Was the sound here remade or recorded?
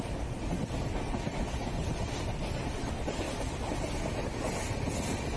recorded